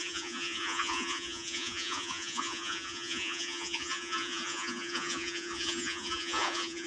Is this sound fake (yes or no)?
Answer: yes